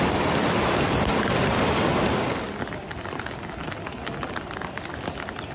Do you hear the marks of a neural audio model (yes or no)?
no